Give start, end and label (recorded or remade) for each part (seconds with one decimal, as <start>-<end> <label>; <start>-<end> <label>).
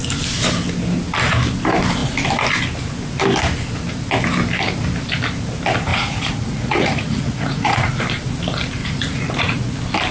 0.0-5.9 recorded; 5.9-8.0 remade; 8.0-8.8 recorded; 8.8-9.7 remade; 9.7-10.1 recorded